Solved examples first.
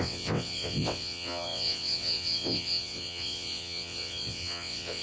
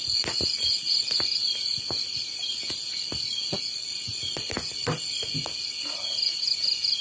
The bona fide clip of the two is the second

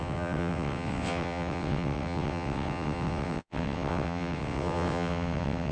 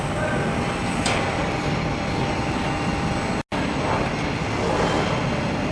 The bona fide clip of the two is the second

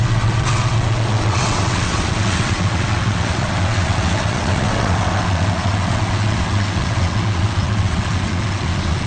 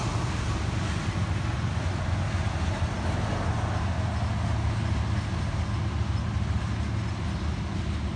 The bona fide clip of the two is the second